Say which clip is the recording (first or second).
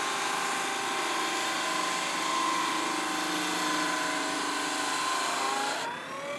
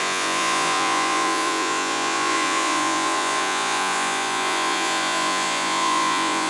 first